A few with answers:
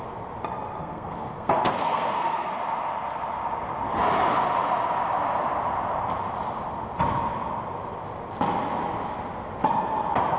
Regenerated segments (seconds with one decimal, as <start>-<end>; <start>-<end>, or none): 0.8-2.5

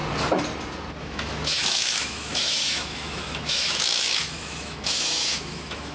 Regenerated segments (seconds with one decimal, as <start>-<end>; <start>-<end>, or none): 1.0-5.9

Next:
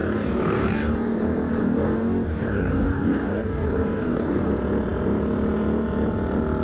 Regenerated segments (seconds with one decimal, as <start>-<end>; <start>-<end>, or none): 0.0-1.2; 1.6-4.5